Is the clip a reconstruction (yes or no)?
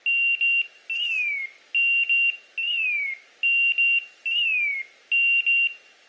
no